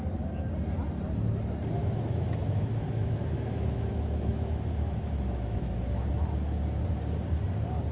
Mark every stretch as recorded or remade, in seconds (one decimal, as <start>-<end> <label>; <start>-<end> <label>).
0.0-1.8 recorded; 1.8-6.1 remade; 6.1-7.9 recorded